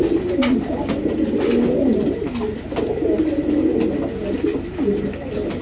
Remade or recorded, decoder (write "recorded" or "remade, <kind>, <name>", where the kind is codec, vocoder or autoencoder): recorded